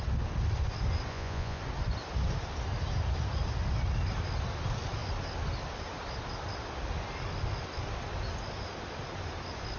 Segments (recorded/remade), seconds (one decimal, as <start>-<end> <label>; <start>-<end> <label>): 0.0-1.1 recorded; 1.1-1.6 remade; 1.6-9.8 recorded